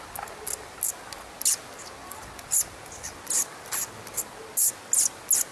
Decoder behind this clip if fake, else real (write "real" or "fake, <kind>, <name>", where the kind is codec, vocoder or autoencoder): real